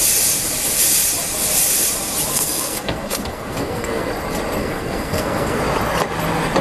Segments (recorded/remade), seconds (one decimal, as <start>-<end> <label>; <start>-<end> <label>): 0.0-2.3 recorded; 2.3-4.1 remade; 4.1-4.6 recorded; 4.6-5.6 remade; 5.6-6.6 recorded